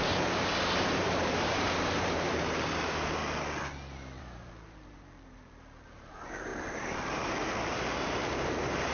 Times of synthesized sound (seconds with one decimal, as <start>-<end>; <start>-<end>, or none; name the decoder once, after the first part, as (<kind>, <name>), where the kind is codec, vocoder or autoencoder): 0.0-3.2 (vocoder, BigVGAN v2); 4.2-8.9